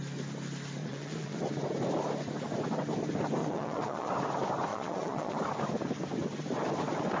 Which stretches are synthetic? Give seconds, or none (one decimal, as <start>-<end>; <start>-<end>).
0.8-1.4; 3.4-4.1; 4.7-5.4